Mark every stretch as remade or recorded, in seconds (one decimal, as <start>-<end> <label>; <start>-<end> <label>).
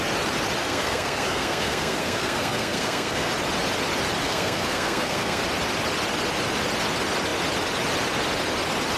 0.0-0.6 recorded; 0.6-3.3 remade; 3.3-4.2 recorded; 4.2-5.4 remade; 5.4-9.0 recorded